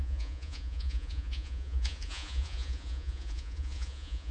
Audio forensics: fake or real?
fake